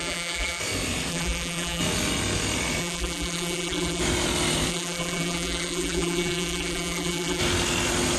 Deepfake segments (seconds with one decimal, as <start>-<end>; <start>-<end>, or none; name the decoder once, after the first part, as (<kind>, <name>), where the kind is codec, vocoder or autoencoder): 0.0-0.6 (vocoder, BigVGAN v2); 1.1-1.8; 2.8-4.0; 4.7-7.4